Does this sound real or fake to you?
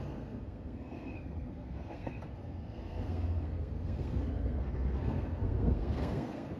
fake